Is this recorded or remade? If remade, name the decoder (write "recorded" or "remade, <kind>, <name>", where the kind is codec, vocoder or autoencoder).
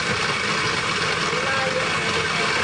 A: recorded